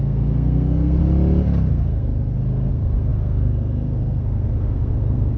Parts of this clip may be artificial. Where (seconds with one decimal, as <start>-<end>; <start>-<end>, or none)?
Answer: 0.0-1.0; 1.7-2.1; 2.7-5.4